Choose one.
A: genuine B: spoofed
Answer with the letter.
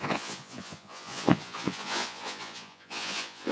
B